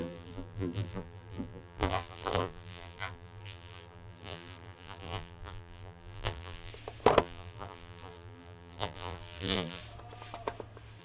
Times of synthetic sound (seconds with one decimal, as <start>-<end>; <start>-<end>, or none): 0.0-6.7; 7.2-9.8